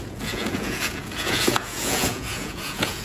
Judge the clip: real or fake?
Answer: fake